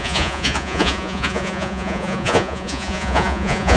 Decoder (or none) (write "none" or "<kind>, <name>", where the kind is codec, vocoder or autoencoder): vocoder, Vocos